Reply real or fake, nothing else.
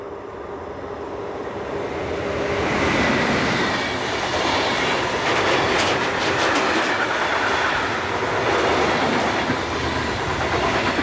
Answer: real